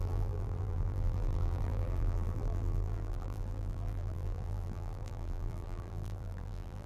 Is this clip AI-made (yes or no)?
yes